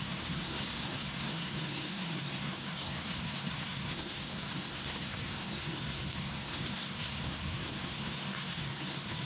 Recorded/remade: remade